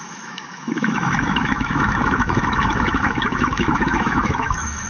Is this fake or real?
fake